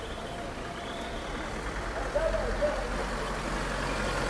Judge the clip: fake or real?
real